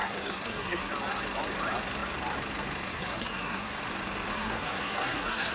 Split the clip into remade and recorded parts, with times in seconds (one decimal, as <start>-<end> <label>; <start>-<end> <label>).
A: 0.0-0.9 remade; 0.9-2.9 recorded; 2.9-3.8 remade; 3.8-4.3 recorded; 4.3-5.5 remade